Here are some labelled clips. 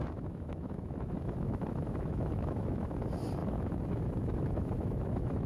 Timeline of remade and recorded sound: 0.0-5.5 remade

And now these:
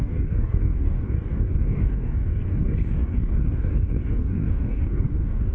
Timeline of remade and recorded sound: 0.0-5.5 remade

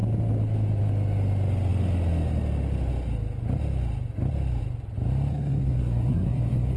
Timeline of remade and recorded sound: 0.0-5.3 recorded; 5.3-6.8 remade

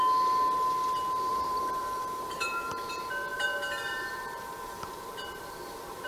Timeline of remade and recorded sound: 0.0-1.3 recorded; 1.3-2.7 remade; 2.7-3.3 recorded; 3.3-6.1 remade

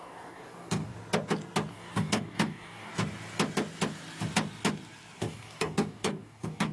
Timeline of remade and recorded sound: 0.0-0.9 remade; 0.9-1.7 recorded; 1.7-2.9 remade; 2.9-5.2 recorded; 5.2-6.7 remade

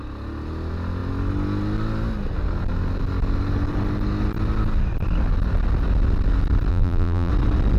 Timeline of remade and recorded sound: 0.0-6.7 recorded; 6.7-7.3 remade; 7.3-7.8 recorded

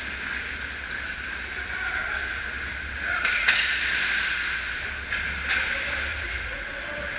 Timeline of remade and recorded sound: 0.0-3.1 recorded; 3.1-3.8 remade; 3.8-6.1 recorded; 6.1-6.8 remade; 6.8-7.2 recorded